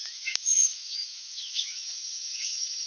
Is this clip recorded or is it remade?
remade